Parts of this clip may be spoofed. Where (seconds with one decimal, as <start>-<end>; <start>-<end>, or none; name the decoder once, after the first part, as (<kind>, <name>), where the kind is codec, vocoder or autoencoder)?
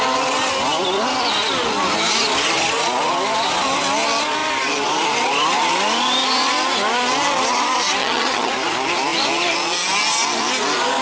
8.0-8.5 (vocoder, HiFi-GAN)